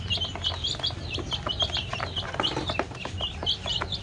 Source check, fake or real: real